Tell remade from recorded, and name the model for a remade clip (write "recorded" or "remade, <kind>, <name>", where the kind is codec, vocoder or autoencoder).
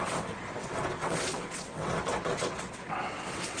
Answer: remade, vocoder, WaveNeXt